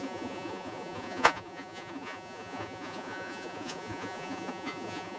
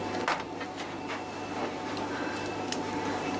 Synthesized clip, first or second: first